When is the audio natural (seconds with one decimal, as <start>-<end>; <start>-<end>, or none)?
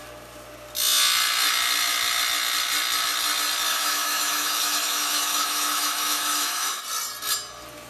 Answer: 0.0-3.7; 6.8-7.9